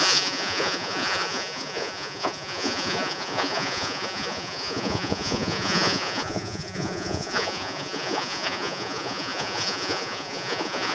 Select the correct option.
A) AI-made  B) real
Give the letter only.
A